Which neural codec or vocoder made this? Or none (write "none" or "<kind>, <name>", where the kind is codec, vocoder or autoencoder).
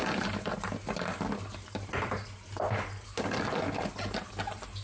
none